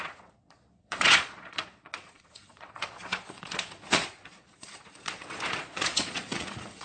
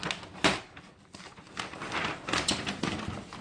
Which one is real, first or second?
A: second